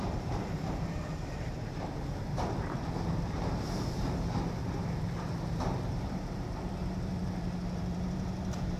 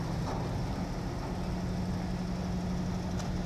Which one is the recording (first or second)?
second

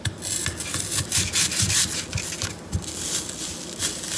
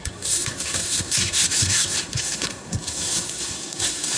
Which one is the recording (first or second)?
first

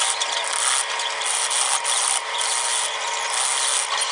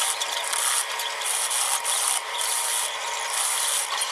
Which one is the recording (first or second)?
first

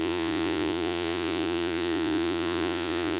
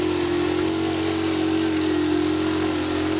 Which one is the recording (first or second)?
second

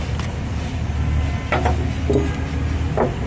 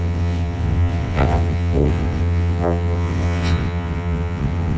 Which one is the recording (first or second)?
first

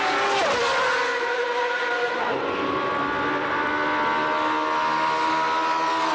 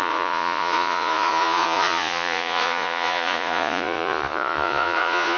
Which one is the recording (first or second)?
first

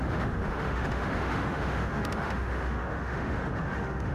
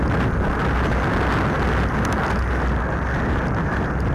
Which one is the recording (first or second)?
second